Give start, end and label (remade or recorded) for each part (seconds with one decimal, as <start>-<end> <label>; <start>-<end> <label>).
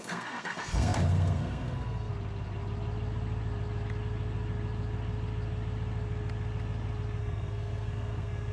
0.0-2.1 remade; 2.1-7.2 recorded; 7.2-8.5 remade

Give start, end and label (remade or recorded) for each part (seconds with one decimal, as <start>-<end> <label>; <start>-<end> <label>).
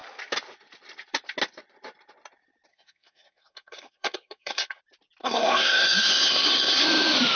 0.0-2.7 recorded; 2.7-4.8 remade; 4.8-5.2 recorded; 5.2-6.8 remade; 6.8-7.4 recorded